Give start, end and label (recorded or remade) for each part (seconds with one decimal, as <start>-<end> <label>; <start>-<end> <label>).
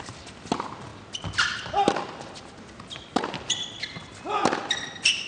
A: 0.0-5.3 recorded